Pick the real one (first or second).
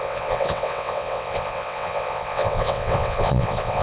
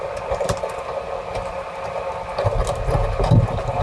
second